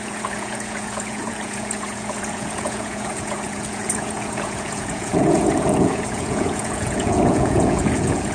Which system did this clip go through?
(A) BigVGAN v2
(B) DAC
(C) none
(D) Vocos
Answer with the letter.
D